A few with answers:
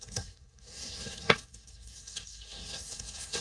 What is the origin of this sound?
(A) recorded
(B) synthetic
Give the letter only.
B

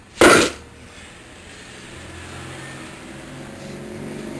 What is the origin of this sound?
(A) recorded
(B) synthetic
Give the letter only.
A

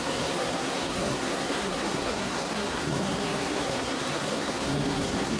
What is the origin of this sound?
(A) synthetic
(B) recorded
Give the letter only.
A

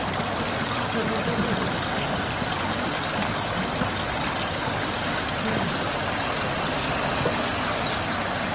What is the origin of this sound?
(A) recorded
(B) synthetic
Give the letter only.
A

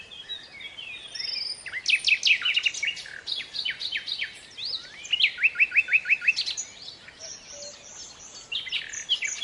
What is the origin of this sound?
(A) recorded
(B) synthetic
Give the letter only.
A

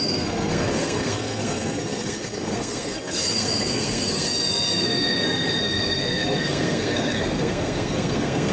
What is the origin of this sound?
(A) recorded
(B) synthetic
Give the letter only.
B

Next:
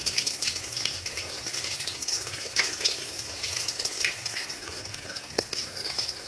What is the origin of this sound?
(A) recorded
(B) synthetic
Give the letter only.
B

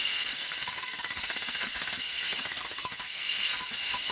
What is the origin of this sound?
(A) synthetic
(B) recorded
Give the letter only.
A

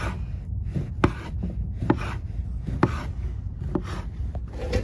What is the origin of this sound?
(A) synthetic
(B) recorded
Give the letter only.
B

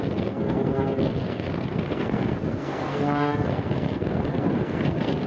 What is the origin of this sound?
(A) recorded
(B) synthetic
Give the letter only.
B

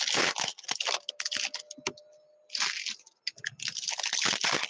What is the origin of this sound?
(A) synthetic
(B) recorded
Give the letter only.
B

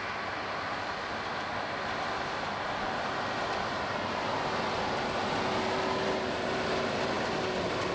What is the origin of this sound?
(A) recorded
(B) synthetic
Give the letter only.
A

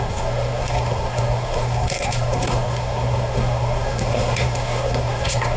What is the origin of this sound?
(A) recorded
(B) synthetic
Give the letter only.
B